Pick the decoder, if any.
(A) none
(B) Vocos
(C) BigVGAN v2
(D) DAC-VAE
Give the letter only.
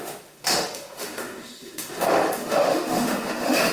D